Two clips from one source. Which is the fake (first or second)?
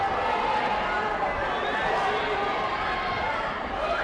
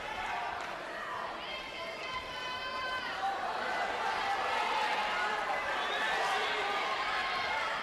second